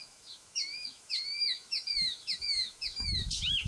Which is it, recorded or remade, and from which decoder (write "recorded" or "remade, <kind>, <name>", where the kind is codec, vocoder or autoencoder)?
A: remade, autoencoder, DAC-VAE